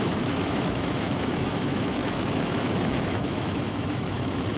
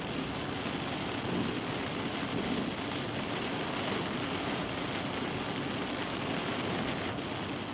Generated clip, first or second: first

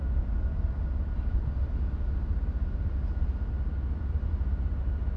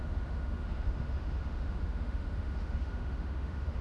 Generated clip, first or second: second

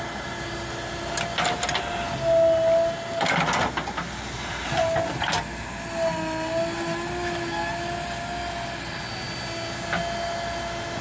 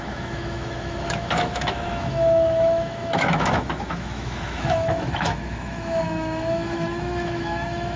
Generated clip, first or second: second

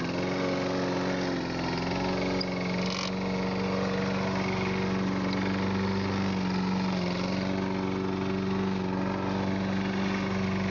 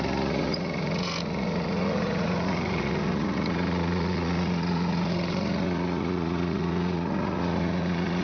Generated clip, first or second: second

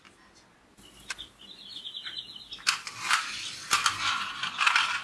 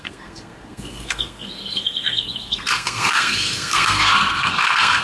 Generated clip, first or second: second